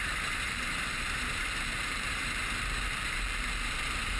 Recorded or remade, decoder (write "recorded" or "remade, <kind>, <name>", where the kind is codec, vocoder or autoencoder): remade, vocoder, BigVGAN v2